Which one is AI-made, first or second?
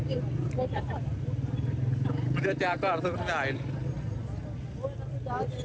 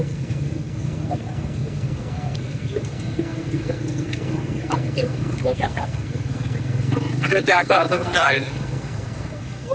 second